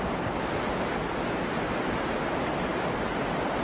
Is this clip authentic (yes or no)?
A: yes